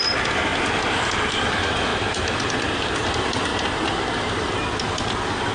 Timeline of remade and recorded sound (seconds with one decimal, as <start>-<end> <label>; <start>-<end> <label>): 0.0-3.5 remade; 3.5-4.9 recorded; 4.9-5.5 remade

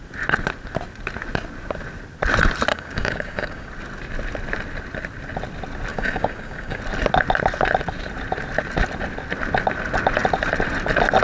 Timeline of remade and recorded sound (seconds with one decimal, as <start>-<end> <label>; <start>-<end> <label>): 0.0-2.7 recorded; 2.7-3.7 remade; 3.7-5.9 recorded; 5.9-6.8 remade; 6.8-11.2 recorded

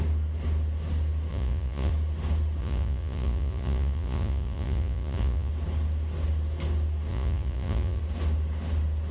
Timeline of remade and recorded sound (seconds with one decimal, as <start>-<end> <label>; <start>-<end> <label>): 0.0-1.3 recorded; 1.3-1.9 remade; 1.9-2.6 recorded; 2.6-5.5 remade; 5.5-7.1 recorded; 7.1-8.0 remade; 8.0-9.1 recorded

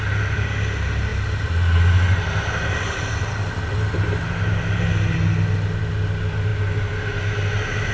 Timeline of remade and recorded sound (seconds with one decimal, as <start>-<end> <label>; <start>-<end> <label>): 0.0-7.9 recorded

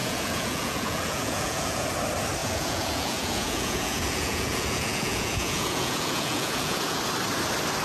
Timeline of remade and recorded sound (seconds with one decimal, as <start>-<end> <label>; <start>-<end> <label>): 0.0-1.9 remade; 1.9-2.4 recorded; 2.4-7.0 remade; 7.0-7.8 recorded